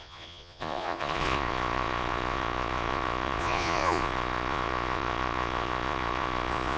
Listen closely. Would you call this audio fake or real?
fake